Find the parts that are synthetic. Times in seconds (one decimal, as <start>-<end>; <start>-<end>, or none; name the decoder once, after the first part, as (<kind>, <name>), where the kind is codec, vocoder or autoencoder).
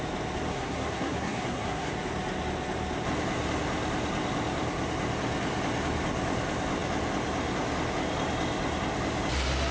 0.5-1.9 (codec, SNAC)